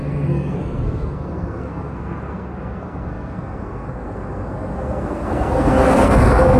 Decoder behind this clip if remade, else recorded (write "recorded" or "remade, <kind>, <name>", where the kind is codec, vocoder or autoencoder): remade, codec, SNAC